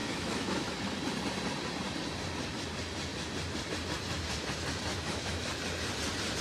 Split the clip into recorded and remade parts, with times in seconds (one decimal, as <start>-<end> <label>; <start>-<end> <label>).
0.0-0.7 remade; 0.7-4.9 recorded; 4.9-5.5 remade; 5.5-6.4 recorded